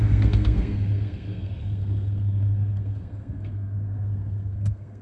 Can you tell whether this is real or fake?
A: fake